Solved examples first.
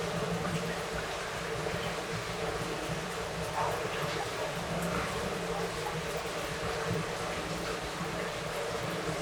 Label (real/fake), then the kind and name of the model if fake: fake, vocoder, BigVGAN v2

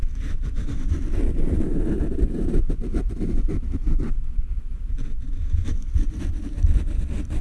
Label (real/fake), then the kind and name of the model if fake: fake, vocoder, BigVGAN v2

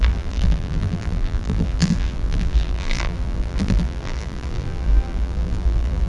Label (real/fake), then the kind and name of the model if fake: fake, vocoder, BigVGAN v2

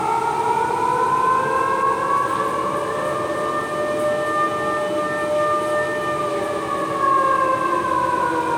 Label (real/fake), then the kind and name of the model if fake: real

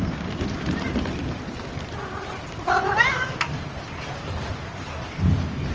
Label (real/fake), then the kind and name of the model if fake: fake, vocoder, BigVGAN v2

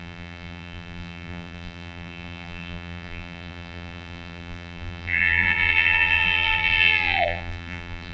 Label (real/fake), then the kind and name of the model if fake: fake, vocoder, BigVGAN v2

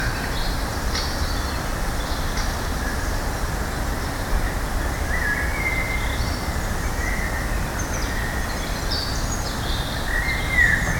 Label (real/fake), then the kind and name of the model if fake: real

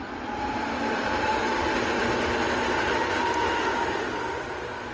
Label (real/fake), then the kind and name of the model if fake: real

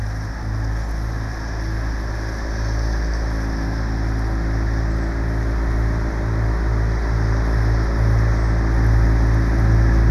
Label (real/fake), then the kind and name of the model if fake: real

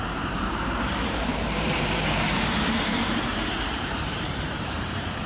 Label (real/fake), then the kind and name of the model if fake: fake, vocoder, BigVGAN v2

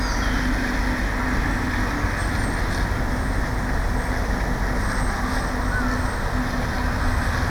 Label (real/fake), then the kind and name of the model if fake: real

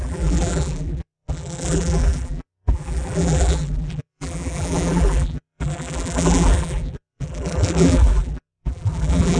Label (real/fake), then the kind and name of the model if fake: fake, vocoder, BigVGAN v2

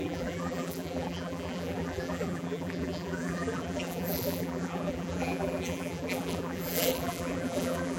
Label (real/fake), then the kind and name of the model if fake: fake, vocoder, BigVGAN v2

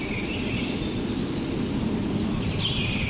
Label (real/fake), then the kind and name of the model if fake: real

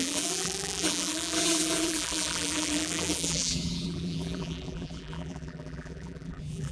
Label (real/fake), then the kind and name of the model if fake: fake, vocoder, BigVGAN v2